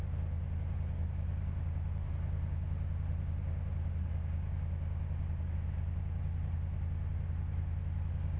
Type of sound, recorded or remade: recorded